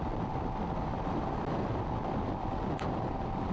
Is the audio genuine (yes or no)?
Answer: yes